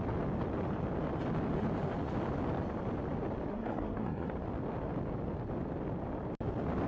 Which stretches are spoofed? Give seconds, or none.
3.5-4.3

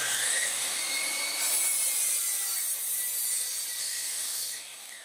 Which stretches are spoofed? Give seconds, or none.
0.0-0.8; 3.8-5.0

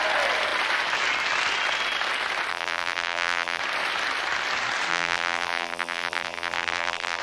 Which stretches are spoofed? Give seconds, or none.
2.5-3.6; 4.9-7.2

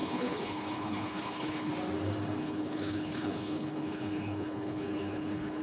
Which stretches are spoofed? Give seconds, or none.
0.0-1.7; 2.4-5.6

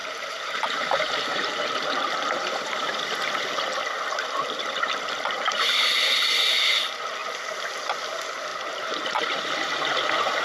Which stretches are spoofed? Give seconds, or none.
0.0-2.9